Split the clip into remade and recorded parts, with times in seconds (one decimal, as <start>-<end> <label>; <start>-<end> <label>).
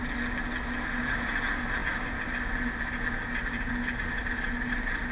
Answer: 0.0-5.1 recorded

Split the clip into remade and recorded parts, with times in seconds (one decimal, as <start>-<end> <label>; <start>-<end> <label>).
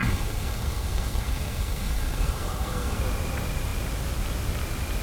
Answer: 0.0-3.0 remade; 3.0-5.0 recorded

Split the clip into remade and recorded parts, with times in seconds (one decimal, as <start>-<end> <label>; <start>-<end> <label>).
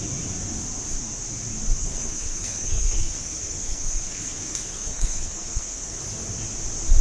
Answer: 0.0-1.8 recorded; 1.8-6.0 remade; 6.0-7.0 recorded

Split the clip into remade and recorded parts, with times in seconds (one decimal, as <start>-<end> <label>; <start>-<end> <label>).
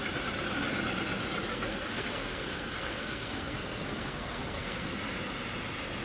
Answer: 0.0-1.5 recorded; 1.5-5.0 remade; 5.0-6.0 recorded